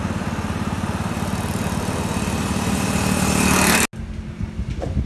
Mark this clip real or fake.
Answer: real